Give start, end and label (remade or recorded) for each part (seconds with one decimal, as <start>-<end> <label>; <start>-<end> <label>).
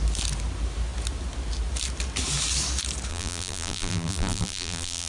0.0-3.1 recorded; 3.1-5.1 remade